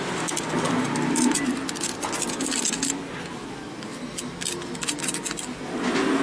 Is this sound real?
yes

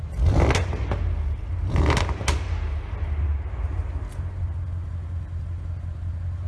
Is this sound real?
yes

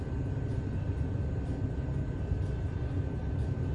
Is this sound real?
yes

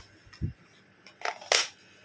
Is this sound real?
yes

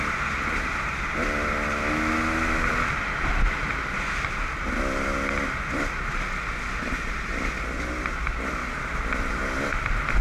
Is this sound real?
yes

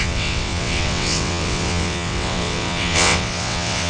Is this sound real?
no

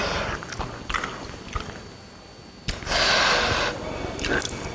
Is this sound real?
yes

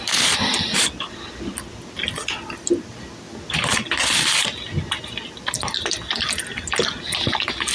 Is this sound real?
yes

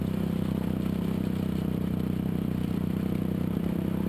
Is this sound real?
no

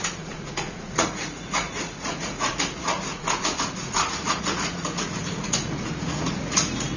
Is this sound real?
no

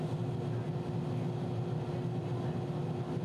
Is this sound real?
yes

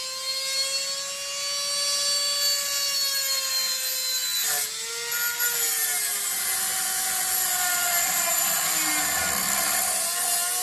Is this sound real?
yes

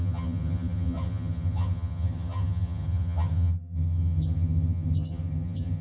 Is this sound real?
no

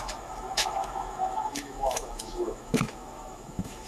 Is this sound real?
no